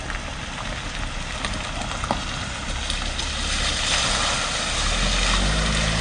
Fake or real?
real